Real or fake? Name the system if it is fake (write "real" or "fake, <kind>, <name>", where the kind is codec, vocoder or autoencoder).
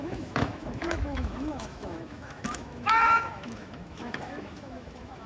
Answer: fake, autoencoder, DAC-VAE